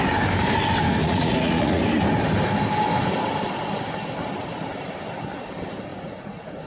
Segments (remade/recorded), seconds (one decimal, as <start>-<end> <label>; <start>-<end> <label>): 0.0-1.0 recorded; 1.0-1.8 remade; 1.8-5.9 recorded; 5.9-6.7 remade